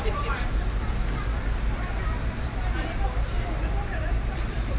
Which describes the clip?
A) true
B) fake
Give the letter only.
B